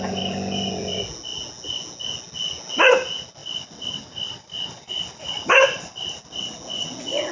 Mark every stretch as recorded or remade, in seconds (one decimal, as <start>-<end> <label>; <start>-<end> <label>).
0.0-7.3 recorded